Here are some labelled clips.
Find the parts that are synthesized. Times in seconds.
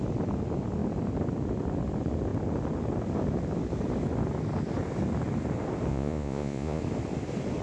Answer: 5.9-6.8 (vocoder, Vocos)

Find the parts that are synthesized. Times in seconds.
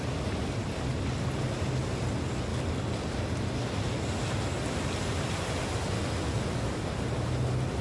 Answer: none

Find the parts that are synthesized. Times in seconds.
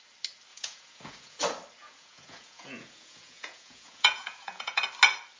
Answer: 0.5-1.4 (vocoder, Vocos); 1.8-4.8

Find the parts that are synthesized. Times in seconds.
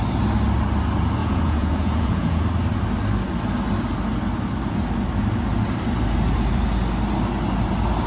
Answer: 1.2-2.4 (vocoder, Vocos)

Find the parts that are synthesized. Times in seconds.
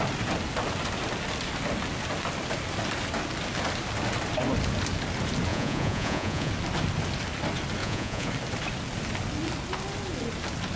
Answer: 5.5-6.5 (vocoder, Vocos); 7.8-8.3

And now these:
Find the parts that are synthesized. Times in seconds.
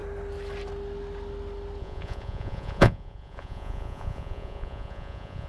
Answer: 1.8-5.5 (vocoder, Vocos)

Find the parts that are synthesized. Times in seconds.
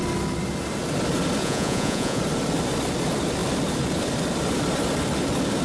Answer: 1.4-2.2 (vocoder, Vocos)